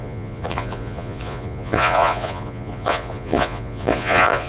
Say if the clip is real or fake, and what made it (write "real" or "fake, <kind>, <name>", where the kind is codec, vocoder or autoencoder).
fake, vocoder, Vocos